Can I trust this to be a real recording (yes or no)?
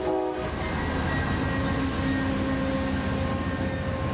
yes